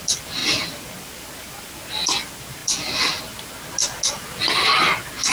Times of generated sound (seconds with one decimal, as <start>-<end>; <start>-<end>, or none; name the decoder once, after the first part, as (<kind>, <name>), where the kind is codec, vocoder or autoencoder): none